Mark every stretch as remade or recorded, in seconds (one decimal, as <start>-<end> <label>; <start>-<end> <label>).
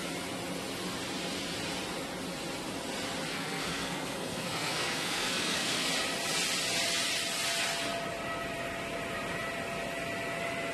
0.0-3.3 recorded; 3.3-5.9 remade; 5.9-10.7 recorded